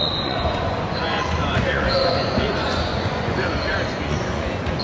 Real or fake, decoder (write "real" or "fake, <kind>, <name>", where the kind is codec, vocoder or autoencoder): fake, vocoder, Vocos